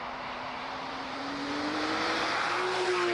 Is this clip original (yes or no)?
no